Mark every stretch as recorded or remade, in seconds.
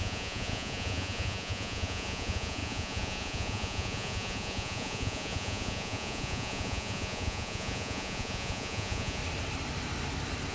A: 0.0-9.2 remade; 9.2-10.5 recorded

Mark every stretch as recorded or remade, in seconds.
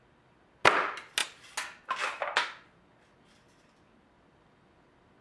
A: 0.0-5.2 recorded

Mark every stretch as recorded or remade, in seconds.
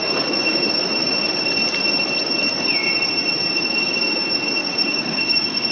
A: 0.0-4.6 recorded; 4.6-5.7 remade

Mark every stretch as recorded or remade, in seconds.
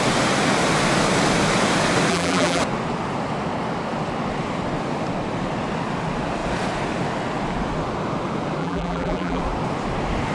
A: 0.0-2.1 recorded; 2.1-2.6 remade; 2.6-8.6 recorded; 8.6-9.4 remade; 9.4-10.3 recorded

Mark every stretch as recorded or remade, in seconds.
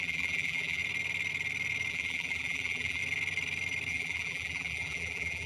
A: 0.0-0.8 remade; 0.8-1.9 recorded; 1.9-3.0 remade; 3.0-3.9 recorded; 3.9-5.5 remade